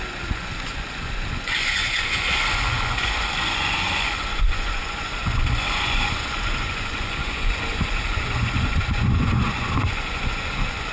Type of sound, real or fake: fake